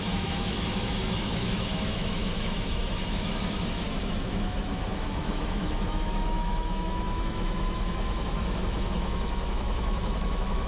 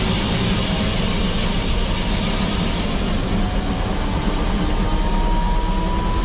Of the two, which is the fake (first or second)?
first